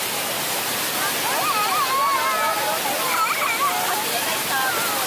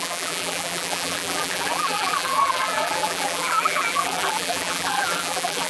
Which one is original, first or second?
first